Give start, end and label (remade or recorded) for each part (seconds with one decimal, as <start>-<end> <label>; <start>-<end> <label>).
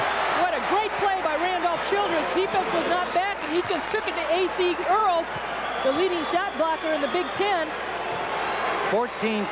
0.0-3.4 recorded; 3.4-4.1 remade; 4.1-9.5 recorded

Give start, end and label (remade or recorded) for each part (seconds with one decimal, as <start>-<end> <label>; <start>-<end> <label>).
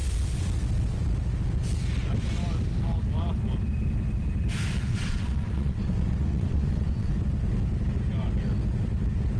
0.0-4.9 recorded; 4.9-7.1 remade; 7.1-9.4 recorded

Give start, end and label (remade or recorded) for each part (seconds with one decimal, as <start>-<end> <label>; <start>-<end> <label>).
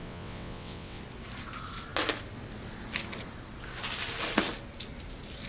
0.0-1.0 remade; 1.0-5.5 recorded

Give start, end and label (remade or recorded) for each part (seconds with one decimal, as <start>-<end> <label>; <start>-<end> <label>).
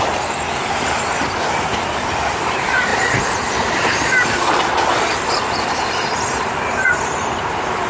0.0-7.9 recorded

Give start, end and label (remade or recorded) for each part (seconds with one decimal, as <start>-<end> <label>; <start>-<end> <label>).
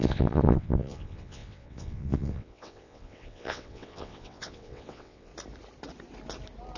0.0-5.3 remade; 5.3-6.8 recorded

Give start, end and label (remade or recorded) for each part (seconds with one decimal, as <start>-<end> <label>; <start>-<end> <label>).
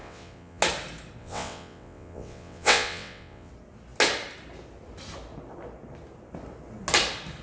0.0-0.6 remade; 0.6-1.2 recorded; 1.2-3.5 remade; 3.5-7.4 recorded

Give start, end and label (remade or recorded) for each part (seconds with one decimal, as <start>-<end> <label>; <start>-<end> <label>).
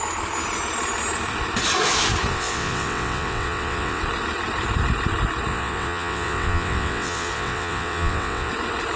0.0-2.3 recorded; 2.3-4.0 remade; 4.0-5.5 recorded; 5.5-8.5 remade; 8.5-9.0 recorded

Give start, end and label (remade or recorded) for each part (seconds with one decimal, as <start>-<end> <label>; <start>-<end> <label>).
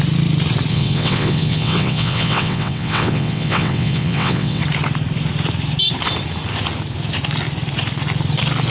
0.0-0.7 recorded; 0.7-4.6 remade; 4.6-8.7 recorded